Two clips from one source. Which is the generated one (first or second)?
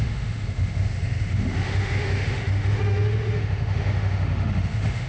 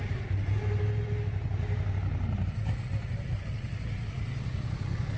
first